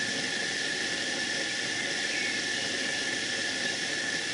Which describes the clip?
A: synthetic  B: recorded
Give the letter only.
B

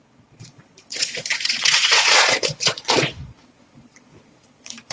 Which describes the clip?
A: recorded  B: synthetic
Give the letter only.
B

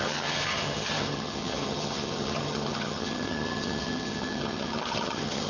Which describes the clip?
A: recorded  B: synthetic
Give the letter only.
B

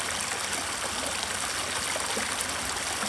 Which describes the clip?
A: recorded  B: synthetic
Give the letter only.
A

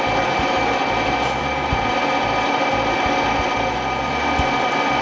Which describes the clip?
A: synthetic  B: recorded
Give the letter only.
B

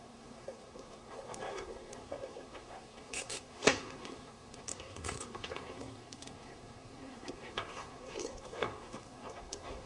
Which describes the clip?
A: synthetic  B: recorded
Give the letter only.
A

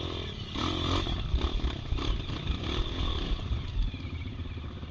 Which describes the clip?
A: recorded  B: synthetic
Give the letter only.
A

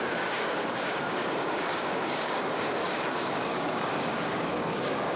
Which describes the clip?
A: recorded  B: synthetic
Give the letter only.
B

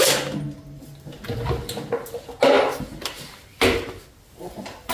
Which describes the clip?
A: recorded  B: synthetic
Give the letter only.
A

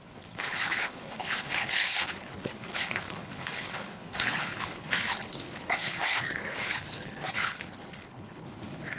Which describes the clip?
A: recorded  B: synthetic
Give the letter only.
B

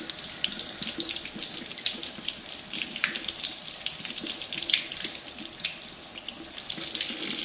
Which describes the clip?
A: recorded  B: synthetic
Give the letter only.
A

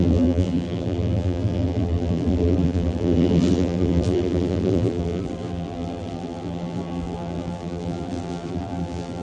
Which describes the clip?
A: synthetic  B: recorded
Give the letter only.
A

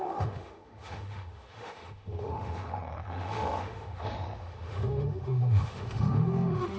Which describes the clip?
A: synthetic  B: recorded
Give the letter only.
A